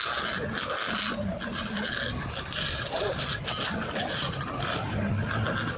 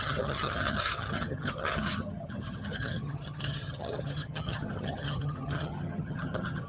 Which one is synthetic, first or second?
second